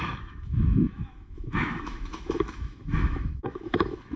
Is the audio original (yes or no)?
no